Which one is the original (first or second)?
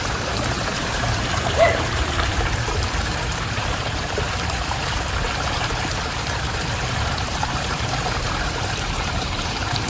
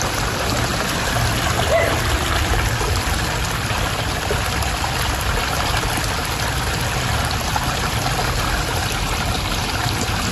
second